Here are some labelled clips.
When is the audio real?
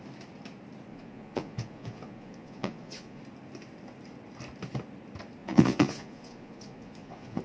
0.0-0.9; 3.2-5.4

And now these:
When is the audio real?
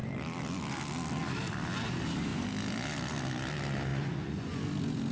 0.0-3.9; 4.6-5.1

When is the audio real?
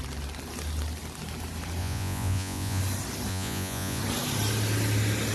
0.0-1.8; 2.8-3.3; 4.0-5.3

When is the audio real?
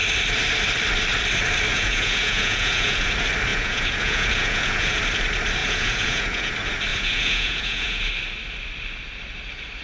0.0-1.7; 3.1-3.5; 5.0-5.6; 6.5-6.9; 8.1-9.8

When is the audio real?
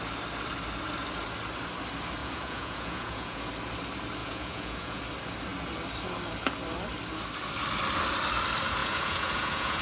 0.0-2.2; 3.5-4.2; 5.0-8.8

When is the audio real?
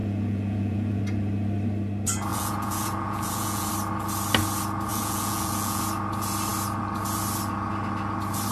1.0-2.3; 3.7-4.9; 5.8-8.5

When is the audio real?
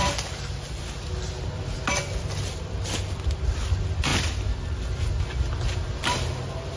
0.0-6.8